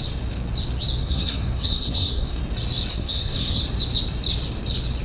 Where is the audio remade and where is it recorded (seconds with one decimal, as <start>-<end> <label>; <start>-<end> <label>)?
0.0-1.0 recorded; 1.0-2.4 remade; 2.4-2.9 recorded; 2.9-3.6 remade; 3.6-5.0 recorded